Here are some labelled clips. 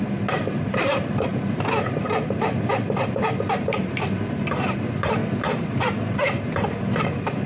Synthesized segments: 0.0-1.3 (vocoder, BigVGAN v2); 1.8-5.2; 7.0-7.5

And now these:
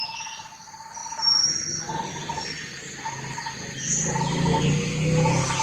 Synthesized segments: none